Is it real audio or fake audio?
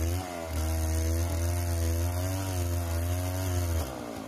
real